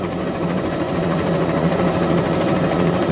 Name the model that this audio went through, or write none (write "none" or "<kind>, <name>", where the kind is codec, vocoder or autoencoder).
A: vocoder, Vocos